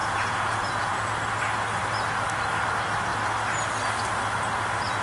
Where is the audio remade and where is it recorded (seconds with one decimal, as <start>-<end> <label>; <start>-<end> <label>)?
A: 0.0-1.1 remade; 1.1-5.0 recorded